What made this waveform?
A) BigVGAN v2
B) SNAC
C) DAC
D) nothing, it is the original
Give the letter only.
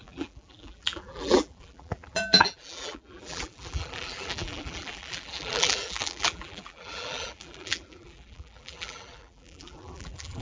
A